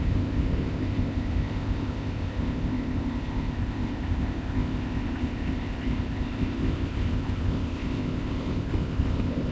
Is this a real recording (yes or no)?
no